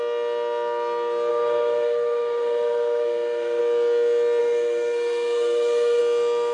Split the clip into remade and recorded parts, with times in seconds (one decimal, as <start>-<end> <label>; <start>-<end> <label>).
0.0-1.3 recorded; 1.3-3.6 remade; 3.6-4.4 recorded; 4.4-6.0 remade; 6.0-6.5 recorded